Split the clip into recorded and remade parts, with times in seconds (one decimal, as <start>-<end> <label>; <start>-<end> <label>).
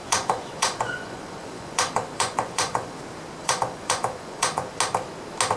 0.0-3.0 remade; 3.0-3.4 recorded; 3.4-4.7 remade; 4.7-5.6 recorded